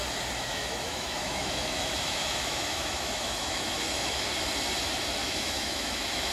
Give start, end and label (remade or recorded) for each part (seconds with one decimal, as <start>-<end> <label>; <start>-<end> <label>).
0.0-0.5 recorded; 0.5-4.3 remade; 4.3-5.2 recorded; 5.2-6.3 remade